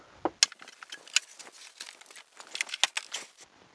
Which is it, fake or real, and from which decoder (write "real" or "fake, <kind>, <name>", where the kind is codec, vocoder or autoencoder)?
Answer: real